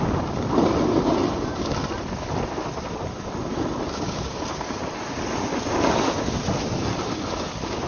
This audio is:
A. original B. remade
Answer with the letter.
A